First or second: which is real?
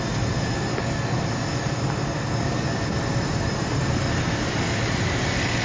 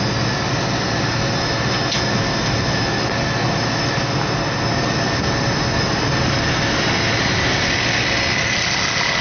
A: second